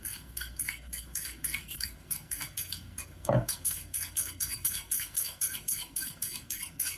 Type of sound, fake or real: fake